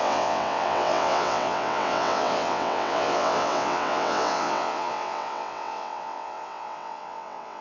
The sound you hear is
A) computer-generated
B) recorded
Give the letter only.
A